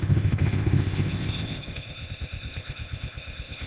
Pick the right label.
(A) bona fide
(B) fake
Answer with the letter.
B